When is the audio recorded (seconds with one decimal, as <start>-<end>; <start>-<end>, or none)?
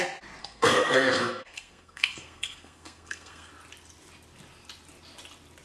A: 0.0-0.4; 3.5-5.6